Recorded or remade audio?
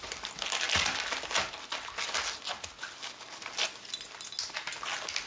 recorded